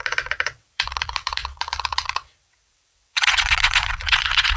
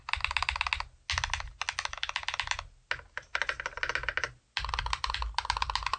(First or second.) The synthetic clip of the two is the first